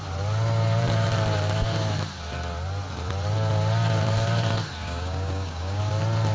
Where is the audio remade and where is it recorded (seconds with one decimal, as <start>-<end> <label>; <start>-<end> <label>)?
0.0-4.8 recorded; 4.8-5.8 remade; 5.8-6.3 recorded